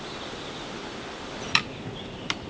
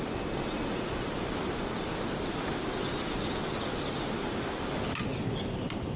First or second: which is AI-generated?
first